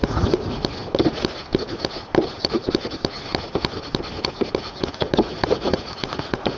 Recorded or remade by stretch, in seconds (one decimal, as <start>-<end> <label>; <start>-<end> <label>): 0.0-0.6 remade; 0.6-4.6 recorded; 4.6-6.6 remade